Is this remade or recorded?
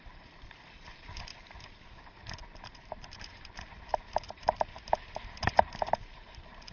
remade